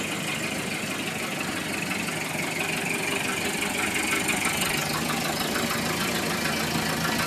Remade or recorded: recorded